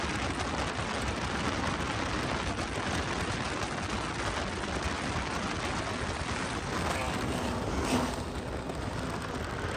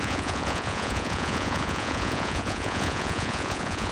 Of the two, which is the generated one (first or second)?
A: second